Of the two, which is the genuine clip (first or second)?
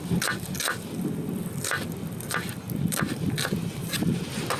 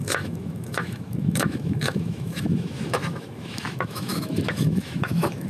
first